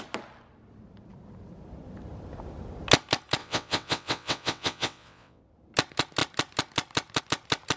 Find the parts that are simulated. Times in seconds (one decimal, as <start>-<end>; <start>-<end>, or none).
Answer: 3.4-5.4